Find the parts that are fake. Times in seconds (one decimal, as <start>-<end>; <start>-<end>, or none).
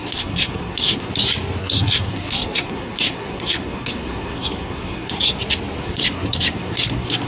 0.0-1.1; 1.6-5.2; 5.8-7.3